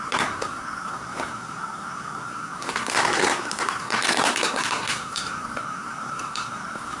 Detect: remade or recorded remade